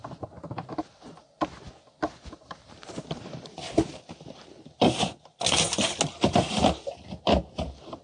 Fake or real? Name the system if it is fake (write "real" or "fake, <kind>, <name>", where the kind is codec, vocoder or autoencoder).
real